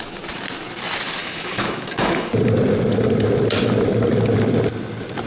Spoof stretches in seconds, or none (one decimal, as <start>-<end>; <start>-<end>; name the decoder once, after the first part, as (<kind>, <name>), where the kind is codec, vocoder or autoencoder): 1.2-2.3 (autoencoder, DAC-VAE)